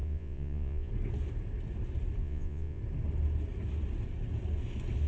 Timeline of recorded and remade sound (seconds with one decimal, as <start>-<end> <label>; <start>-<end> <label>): 0.0-0.9 remade; 0.9-2.2 recorded; 2.2-2.8 remade; 2.8-5.1 recorded